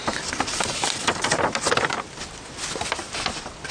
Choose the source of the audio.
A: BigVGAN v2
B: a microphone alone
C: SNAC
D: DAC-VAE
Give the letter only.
B